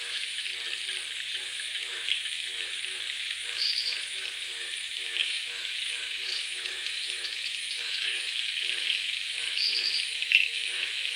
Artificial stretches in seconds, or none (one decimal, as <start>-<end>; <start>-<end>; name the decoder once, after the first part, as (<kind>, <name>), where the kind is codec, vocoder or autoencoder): 0.0-0.5 (autoencoder, DAC-VAE); 1.4-11.2